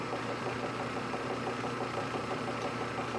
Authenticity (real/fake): fake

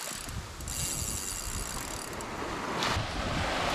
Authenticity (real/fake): real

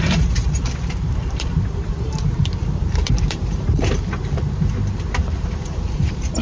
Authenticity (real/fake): fake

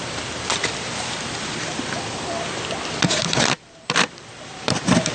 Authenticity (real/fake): fake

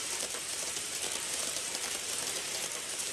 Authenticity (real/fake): fake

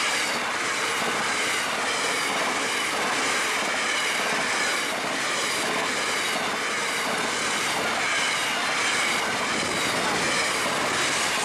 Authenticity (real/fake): real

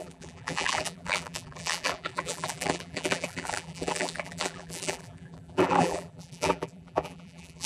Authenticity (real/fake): fake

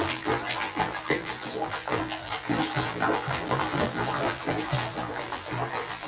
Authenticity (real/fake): fake